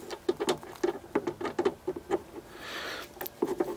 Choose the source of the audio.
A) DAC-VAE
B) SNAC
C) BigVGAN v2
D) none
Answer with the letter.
D